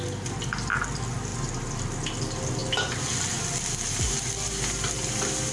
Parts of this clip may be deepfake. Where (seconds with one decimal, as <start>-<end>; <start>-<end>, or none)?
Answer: none